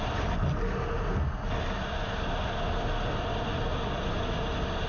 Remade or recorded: recorded